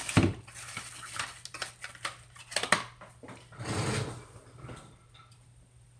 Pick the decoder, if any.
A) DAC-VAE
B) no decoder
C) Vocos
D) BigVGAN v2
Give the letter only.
B